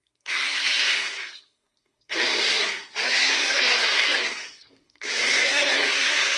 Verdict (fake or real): fake